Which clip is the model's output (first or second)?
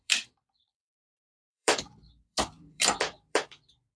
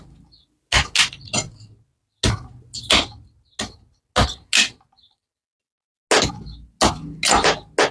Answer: first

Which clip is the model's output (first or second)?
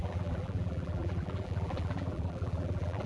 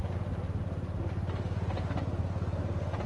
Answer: first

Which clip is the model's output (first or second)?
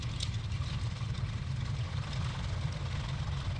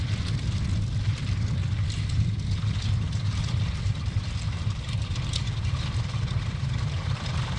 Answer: second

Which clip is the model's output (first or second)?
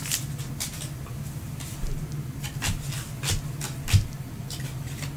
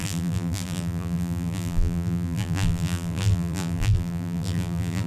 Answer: second